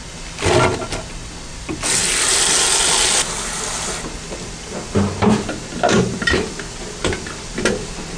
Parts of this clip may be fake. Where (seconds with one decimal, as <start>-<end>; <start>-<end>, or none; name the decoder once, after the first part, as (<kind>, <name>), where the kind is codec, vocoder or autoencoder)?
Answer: none